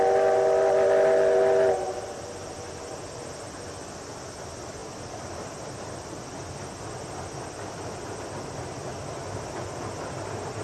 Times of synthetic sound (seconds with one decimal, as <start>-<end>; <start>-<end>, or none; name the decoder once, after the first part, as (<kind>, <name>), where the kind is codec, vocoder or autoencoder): none

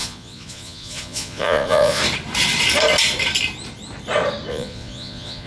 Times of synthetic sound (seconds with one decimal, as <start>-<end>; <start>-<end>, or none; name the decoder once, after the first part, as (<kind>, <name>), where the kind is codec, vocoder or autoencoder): 0.0-2.0 (vocoder, Vocos); 4.5-5.5

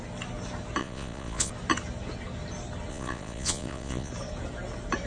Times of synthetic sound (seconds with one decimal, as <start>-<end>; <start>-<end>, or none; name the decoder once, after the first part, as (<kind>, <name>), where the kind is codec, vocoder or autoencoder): 0.8-1.5 (vocoder, Vocos); 2.9-4.1

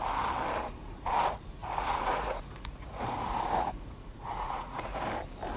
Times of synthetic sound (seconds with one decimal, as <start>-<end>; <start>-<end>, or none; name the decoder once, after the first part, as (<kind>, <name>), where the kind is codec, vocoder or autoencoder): 1.6-5.0 (vocoder, Vocos)

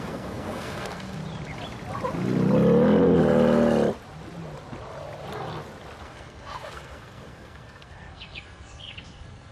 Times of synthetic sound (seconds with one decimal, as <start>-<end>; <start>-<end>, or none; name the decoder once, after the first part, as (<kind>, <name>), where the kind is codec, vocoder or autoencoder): 0.0-1.2 (codec, SNAC); 6.0-9.5

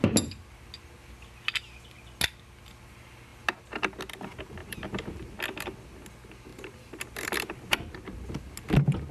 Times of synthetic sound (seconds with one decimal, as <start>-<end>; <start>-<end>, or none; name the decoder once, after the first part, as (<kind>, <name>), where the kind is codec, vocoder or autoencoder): 4.6-5.2 (vocoder, BigVGAN v2); 6.5-7.8

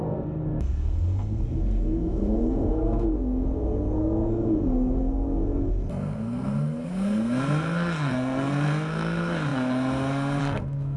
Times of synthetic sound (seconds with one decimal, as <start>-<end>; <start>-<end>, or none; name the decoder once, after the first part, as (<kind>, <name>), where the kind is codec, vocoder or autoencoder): 0.0-11.0 (codec, SNAC)